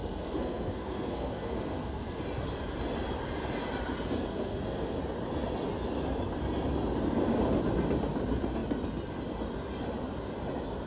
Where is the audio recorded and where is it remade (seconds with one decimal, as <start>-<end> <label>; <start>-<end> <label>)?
0.0-2.2 remade; 2.2-4.3 recorded; 4.3-5.0 remade; 5.0-10.9 recorded